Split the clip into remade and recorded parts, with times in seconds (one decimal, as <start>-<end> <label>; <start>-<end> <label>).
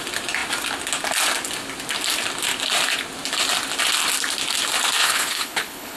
0.0-5.0 recorded; 5.0-6.0 remade